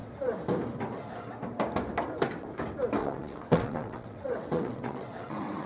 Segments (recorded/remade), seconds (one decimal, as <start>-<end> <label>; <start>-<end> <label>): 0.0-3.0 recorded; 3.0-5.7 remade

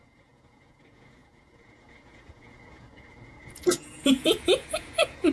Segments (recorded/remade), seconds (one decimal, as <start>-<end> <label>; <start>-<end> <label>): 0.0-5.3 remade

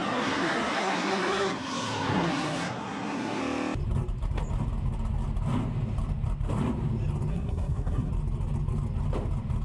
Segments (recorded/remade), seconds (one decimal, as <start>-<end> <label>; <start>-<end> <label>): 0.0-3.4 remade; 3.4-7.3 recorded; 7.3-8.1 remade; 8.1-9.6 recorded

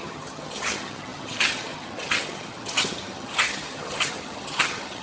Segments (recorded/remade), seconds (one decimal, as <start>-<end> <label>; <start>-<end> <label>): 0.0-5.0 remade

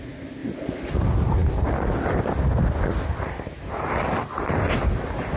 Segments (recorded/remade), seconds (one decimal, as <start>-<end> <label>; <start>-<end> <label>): 0.0-5.4 recorded

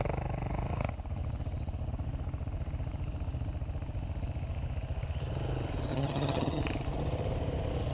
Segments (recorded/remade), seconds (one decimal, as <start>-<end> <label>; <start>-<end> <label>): 0.0-5.9 recorded; 5.9-6.6 remade; 6.6-7.9 recorded

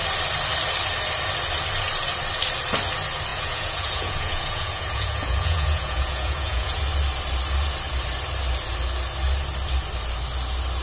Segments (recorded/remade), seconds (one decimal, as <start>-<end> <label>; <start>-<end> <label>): 0.0-3.3 recorded; 3.3-6.8 remade; 6.8-10.8 recorded